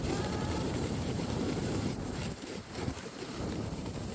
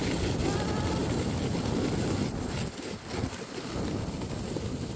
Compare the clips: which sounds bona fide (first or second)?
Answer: second